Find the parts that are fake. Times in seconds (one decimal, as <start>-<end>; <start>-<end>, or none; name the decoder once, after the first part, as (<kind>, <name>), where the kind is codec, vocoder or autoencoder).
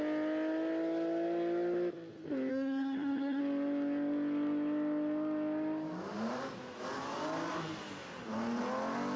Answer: 2.5-3.4 (codec, SNAC)